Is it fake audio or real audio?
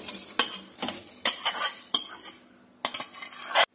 real